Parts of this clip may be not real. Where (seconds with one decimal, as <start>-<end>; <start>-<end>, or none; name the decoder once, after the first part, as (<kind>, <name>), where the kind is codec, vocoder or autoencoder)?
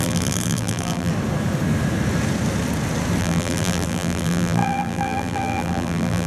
0.0-1.1 (vocoder, BigVGAN v2); 3.2-6.3